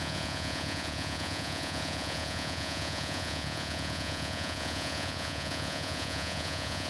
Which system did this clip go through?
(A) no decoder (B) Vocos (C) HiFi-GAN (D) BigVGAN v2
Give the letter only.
B